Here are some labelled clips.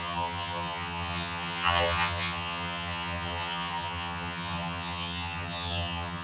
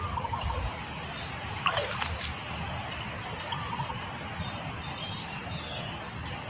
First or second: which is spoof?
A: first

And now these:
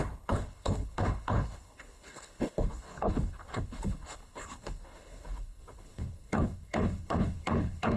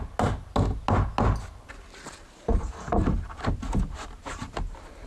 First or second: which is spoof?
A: first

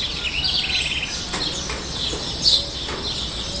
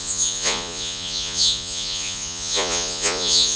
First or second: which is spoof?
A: second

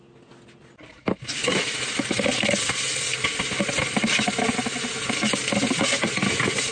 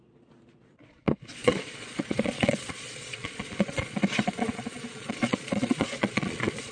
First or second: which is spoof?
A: second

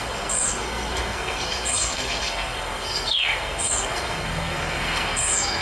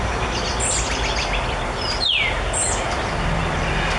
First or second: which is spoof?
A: first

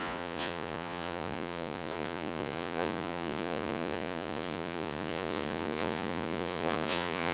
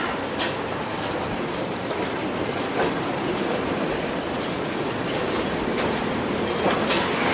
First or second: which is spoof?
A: first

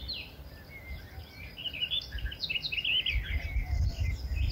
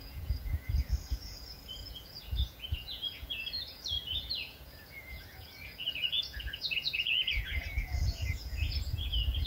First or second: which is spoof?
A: second